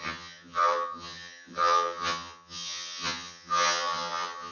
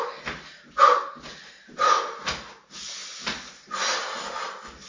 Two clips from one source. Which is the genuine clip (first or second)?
second